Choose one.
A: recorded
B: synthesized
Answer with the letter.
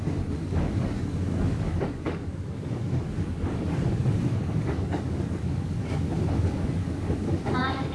B